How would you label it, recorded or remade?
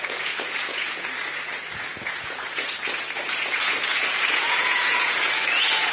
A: remade